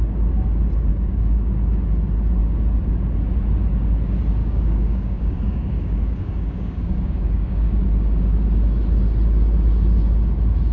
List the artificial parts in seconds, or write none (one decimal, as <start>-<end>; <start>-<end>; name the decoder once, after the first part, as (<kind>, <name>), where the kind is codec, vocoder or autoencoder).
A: 0.9-1.5 (codec, DAC); 4.4-7.8